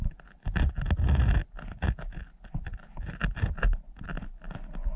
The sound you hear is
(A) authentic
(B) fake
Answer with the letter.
A